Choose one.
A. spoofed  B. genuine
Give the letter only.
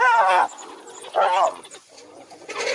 A